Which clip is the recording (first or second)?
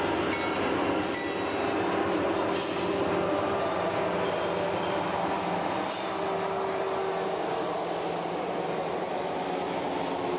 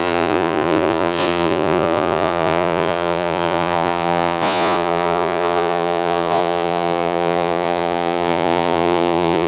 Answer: first